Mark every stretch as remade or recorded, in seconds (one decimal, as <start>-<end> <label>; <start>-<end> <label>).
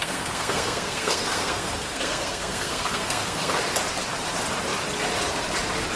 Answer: 0.0-3.6 remade; 3.6-6.0 recorded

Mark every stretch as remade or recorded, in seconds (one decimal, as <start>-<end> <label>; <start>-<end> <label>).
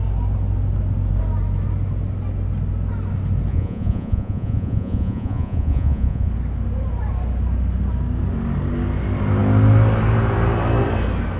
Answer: 0.0-3.5 recorded; 3.5-6.3 remade; 6.3-11.4 recorded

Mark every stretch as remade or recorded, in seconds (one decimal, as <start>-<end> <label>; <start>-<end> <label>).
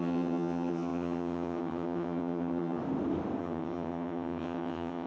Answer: 0.0-2.8 remade; 2.8-3.4 recorded; 3.4-5.1 remade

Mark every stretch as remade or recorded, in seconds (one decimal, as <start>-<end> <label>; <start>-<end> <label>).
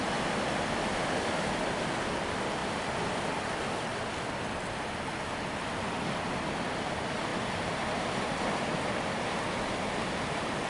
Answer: 0.0-2.6 recorded; 2.6-3.5 remade; 3.5-7.3 recorded; 7.3-8.9 remade; 8.9-10.7 recorded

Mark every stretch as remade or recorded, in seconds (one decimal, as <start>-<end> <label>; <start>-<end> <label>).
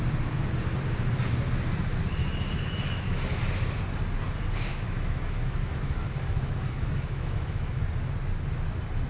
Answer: 0.0-2.2 recorded; 2.2-3.4 remade; 3.4-4.7 recorded; 4.7-7.8 remade; 7.8-9.1 recorded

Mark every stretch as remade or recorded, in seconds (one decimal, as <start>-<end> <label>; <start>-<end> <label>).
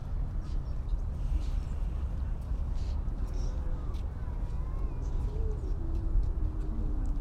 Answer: 0.0-7.2 recorded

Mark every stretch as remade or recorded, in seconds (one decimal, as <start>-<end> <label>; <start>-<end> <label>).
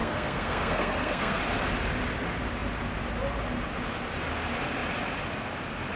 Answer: 0.0-1.4 remade; 1.4-6.0 recorded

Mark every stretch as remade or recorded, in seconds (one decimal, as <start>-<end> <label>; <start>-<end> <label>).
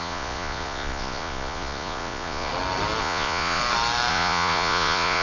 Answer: 0.0-2.5 remade; 2.5-3.0 recorded; 3.0-3.6 remade; 3.6-4.1 recorded; 4.1-5.2 remade